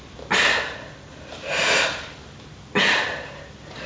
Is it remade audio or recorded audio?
recorded